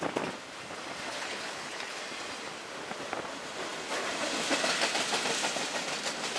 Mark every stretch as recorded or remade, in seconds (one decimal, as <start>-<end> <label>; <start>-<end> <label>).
0.0-1.1 recorded; 1.1-2.0 remade; 2.0-6.4 recorded